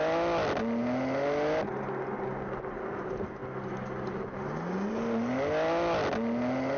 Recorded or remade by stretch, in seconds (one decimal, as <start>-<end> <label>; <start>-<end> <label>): 0.0-6.8 recorded